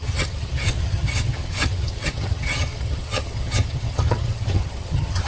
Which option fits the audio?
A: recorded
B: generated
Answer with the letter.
B